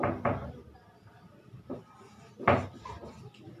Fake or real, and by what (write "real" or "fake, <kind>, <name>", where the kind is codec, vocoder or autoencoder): real